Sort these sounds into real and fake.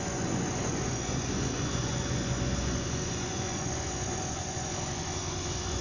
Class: fake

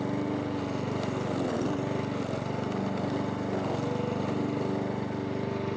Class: real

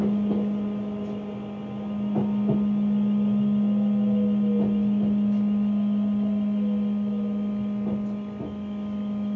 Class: real